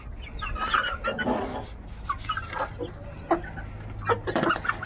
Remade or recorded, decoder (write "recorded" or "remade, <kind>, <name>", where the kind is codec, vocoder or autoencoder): recorded